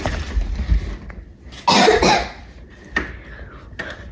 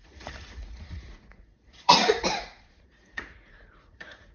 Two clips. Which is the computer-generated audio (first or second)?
second